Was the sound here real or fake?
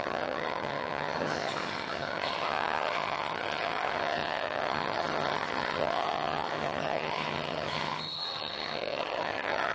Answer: fake